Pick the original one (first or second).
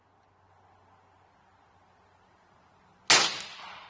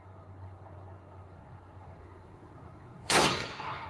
first